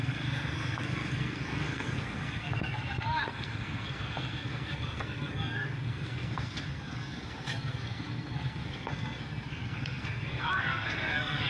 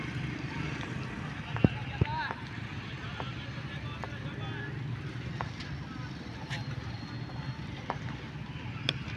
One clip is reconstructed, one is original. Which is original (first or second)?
second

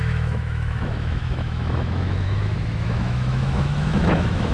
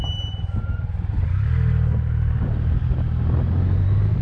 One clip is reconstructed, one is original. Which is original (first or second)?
second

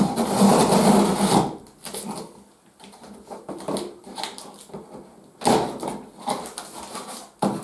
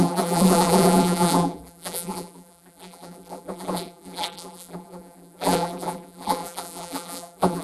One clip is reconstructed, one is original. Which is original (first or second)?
first